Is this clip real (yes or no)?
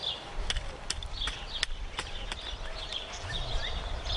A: yes